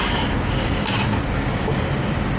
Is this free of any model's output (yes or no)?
yes